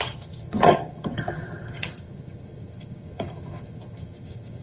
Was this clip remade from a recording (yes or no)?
yes